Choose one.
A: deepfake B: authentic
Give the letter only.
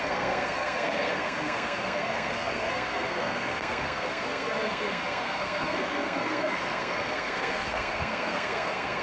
A